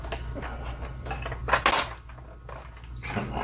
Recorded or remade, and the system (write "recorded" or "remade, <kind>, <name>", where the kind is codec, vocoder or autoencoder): recorded